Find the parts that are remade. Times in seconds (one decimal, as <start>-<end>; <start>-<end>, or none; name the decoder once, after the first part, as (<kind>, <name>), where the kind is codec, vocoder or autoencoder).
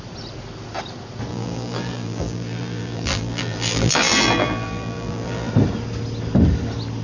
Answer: 1.3-5.5 (vocoder, BigVGAN v2)